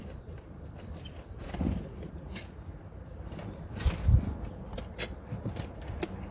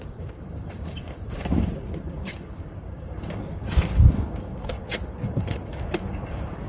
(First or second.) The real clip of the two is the first